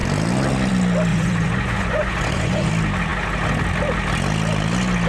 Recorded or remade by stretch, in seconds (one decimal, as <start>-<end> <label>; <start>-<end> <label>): 0.0-1.1 recorded; 1.1-2.7 remade; 2.7-5.1 recorded